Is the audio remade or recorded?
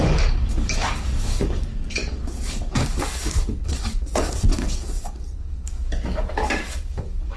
remade